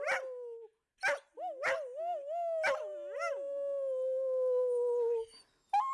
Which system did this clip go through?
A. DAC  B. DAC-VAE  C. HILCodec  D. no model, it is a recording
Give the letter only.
D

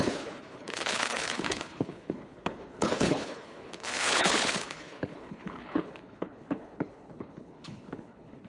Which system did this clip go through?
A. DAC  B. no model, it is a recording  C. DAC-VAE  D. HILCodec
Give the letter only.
D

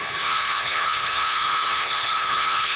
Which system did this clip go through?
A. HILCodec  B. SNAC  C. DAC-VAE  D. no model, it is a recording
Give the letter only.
A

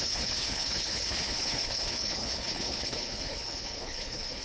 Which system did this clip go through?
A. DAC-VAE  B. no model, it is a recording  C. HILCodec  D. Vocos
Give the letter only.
C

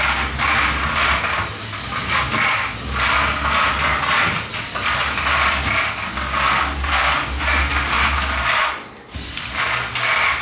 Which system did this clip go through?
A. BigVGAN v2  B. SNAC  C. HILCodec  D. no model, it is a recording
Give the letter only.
D